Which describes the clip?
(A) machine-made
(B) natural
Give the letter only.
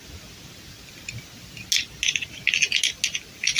B